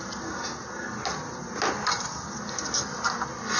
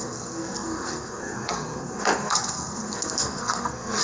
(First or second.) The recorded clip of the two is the first